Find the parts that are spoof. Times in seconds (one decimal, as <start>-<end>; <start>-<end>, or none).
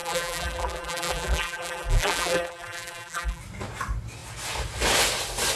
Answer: 0.0-3.4